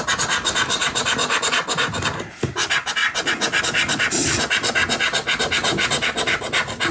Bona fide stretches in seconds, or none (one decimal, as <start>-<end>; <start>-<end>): 0.0-0.8; 1.4-6.9